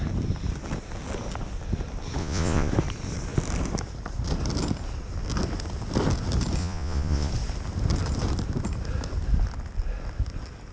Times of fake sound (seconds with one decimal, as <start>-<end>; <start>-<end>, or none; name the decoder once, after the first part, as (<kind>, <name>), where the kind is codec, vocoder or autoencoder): 2.2-2.7 (vocoder, Vocos); 6.6-7.3